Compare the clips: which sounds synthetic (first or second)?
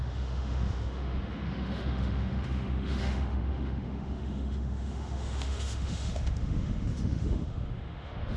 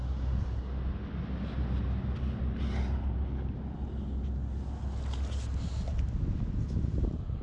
first